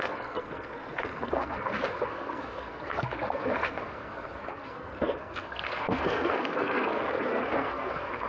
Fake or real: fake